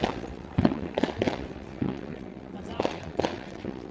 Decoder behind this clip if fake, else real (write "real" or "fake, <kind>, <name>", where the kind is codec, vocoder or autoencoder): fake, vocoder, WaveNeXt